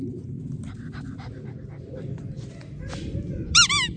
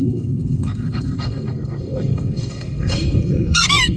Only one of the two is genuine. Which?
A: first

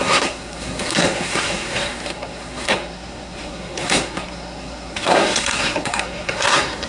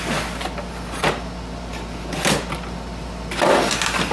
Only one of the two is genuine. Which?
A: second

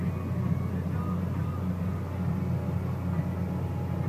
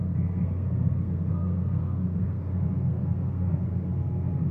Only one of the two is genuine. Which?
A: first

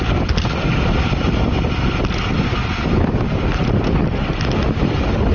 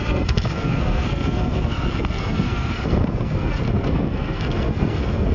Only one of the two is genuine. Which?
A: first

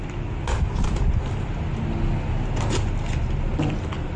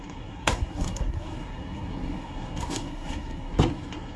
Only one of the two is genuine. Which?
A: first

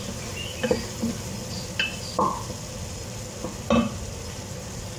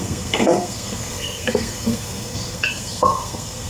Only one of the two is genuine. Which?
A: first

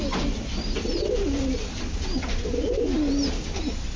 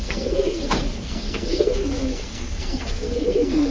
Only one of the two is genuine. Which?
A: first